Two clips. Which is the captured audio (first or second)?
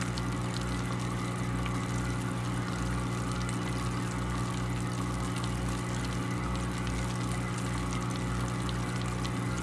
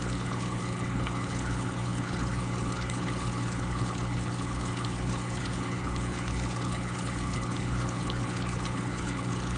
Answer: first